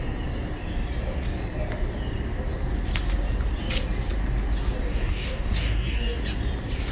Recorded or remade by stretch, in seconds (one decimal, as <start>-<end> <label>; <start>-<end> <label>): 0.0-4.8 recorded; 4.8-6.2 remade; 6.2-6.9 recorded